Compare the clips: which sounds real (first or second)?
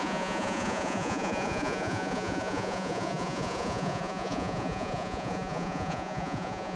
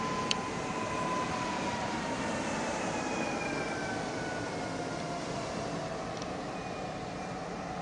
second